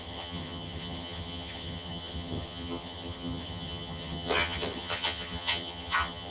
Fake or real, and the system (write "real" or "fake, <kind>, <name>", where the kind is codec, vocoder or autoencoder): fake, vocoder, HiFi-GAN